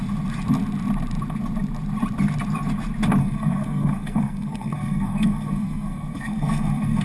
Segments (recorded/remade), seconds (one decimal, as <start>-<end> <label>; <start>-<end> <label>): 0.0-3.2 recorded; 3.2-7.0 remade